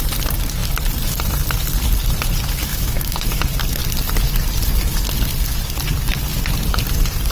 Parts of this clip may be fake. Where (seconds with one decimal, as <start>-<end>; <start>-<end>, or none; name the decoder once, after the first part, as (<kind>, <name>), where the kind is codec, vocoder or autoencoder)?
2.7-3.4 (autoencoder, DAC-VAE)